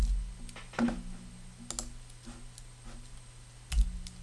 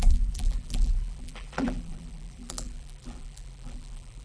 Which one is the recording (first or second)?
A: first